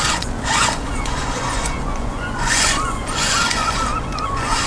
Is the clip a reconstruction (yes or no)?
yes